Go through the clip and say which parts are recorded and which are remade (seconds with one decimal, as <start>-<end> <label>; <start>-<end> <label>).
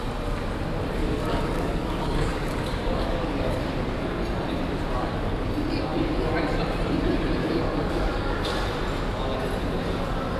0.0-1.0 recorded; 1.0-3.6 remade; 3.6-7.4 recorded; 7.4-8.4 remade; 8.4-10.4 recorded